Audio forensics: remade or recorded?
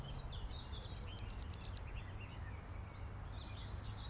recorded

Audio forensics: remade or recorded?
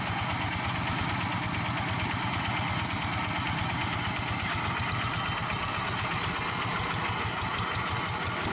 recorded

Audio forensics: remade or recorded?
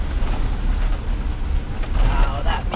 recorded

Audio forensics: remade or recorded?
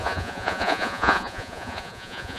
remade